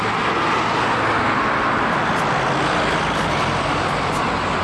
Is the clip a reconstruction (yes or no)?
no